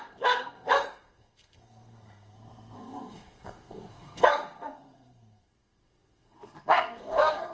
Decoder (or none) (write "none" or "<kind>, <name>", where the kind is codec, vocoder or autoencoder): codec, SNAC